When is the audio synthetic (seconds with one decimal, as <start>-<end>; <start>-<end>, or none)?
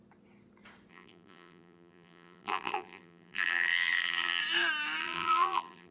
0.9-4.4; 5.0-5.9